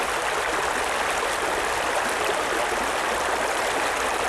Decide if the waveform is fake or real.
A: real